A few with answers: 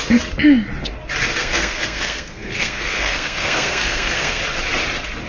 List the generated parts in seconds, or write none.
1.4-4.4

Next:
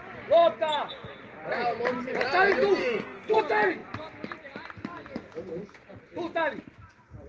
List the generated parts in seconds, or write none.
2.8-3.4

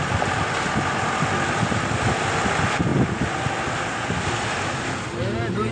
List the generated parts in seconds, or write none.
none

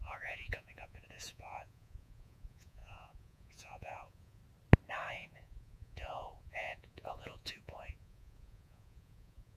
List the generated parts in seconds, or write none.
0.0-4.4; 5.1-9.6

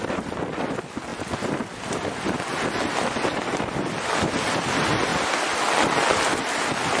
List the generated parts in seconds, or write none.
none

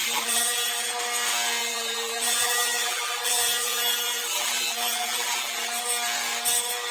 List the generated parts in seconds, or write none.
0.0-1.0; 1.6-5.7